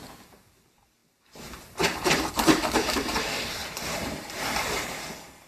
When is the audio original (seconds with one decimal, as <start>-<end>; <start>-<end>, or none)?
none